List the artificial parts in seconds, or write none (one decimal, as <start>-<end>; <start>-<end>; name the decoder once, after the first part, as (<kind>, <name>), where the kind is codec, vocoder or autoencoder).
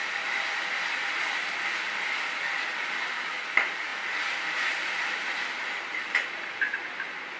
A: none